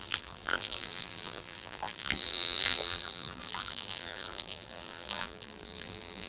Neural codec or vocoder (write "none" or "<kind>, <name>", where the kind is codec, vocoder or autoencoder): vocoder, BigVGAN v2